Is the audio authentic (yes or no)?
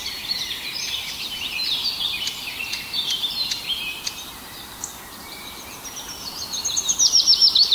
no